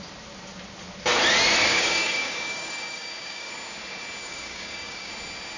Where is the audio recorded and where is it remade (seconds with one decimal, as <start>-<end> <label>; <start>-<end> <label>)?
0.0-1.6 recorded; 1.6-3.5 remade; 3.5-4.2 recorded; 4.2-5.1 remade; 5.1-5.6 recorded